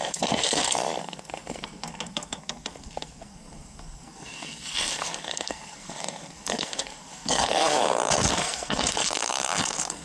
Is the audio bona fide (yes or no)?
no